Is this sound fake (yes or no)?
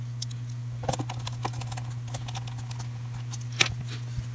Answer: no